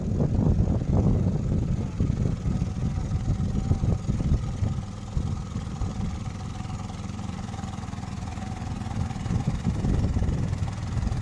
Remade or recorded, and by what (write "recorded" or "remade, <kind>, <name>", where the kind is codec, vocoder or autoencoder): recorded